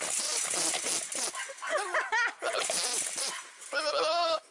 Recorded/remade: recorded